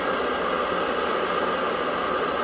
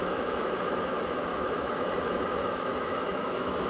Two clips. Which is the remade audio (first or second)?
second